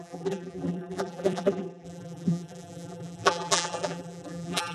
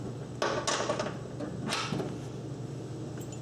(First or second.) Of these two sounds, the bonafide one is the second